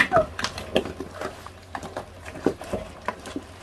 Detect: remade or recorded recorded